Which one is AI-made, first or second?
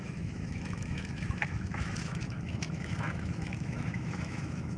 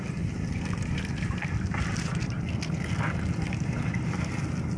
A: first